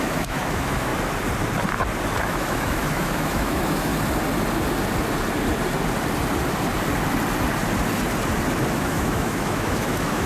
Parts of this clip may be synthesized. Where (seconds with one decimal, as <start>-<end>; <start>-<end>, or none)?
0.0-0.9; 2.2-3.9; 8.7-10.3